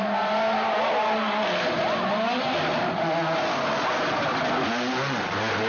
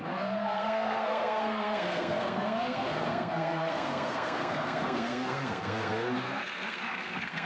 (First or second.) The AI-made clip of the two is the second